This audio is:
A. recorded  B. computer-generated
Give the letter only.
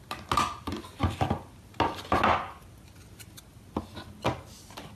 A